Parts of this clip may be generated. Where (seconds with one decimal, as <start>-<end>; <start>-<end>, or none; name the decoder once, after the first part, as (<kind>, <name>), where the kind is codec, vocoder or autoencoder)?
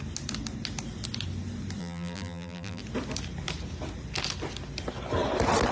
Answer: 1.8-2.8 (vocoder, BigVGAN v2)